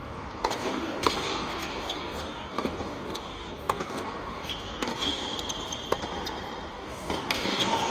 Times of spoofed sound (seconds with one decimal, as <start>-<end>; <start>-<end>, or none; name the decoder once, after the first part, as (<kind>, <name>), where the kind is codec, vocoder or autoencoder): 0.0-5.2 (codec, DAC); 6.7-7.9